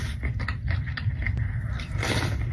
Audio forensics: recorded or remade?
remade